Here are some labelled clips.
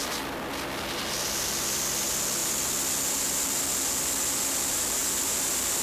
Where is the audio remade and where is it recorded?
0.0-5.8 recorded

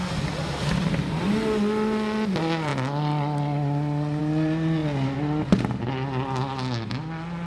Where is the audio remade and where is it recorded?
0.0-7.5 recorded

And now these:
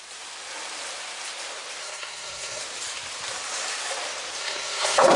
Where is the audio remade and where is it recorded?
0.0-1.8 recorded; 1.8-2.6 remade; 2.6-4.4 recorded; 4.4-5.2 remade

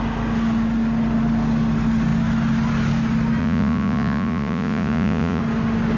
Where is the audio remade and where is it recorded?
0.0-3.4 recorded; 3.4-5.4 remade; 5.4-6.0 recorded

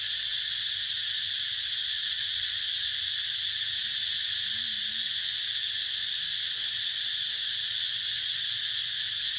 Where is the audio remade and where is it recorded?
0.0-1.0 recorded; 1.0-3.6 remade; 3.6-9.4 recorded